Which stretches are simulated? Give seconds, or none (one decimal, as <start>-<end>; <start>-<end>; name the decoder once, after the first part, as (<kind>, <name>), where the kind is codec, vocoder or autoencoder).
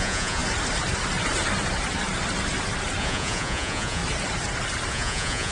0.0-0.4 (vocoder, Vocos); 3.0-4.0; 4.9-5.5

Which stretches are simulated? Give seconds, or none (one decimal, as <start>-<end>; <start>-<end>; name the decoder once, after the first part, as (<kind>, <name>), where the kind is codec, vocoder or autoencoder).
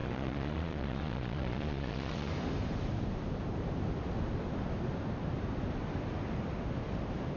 0.0-2.3 (vocoder, Vocos)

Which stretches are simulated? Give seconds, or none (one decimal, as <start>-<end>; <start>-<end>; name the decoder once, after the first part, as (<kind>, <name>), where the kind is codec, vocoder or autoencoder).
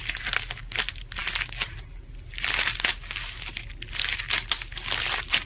none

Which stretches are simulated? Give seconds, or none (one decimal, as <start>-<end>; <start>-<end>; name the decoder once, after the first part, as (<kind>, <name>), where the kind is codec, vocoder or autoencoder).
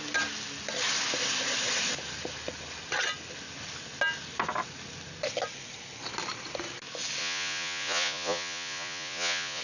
7.2-9.6 (vocoder, Vocos)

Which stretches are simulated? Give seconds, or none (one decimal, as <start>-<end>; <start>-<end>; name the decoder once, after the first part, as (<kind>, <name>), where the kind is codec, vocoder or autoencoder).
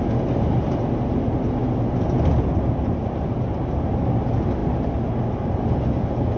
none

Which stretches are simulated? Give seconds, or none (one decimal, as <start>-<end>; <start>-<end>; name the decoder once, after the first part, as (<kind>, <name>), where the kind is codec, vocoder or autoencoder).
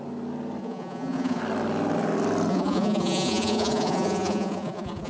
0.6-1.4 (vocoder, Vocos); 2.5-5.1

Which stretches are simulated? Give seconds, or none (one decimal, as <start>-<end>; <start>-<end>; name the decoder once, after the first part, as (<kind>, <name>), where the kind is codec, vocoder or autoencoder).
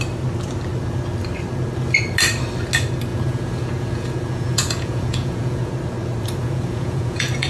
3.1-5.7 (vocoder, Vocos); 6.4-7.5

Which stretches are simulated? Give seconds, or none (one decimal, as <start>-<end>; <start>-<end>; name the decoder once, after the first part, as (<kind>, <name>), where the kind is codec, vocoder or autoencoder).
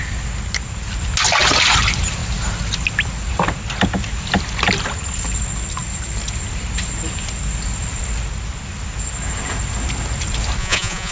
10.6-11.1 (vocoder, Vocos)